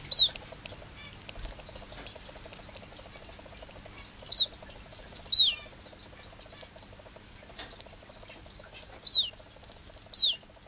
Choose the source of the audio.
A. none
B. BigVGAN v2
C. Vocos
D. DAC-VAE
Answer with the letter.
A